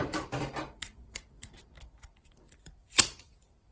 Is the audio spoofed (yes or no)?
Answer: yes